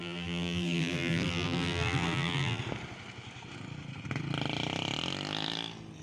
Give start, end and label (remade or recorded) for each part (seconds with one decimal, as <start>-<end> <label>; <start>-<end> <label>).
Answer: 0.0-2.6 remade; 2.6-6.0 recorded